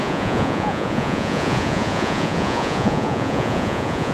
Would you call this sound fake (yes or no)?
yes